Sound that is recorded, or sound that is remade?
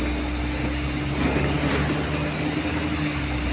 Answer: recorded